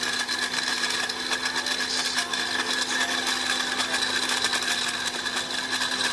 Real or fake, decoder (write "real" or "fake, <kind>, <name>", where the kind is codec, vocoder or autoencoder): real